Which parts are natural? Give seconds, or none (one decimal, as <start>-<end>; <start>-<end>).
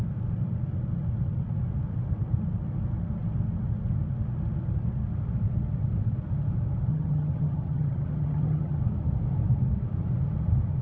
0.0-6.9; 8.8-10.8